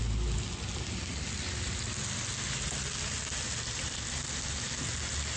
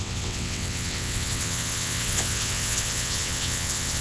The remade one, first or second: second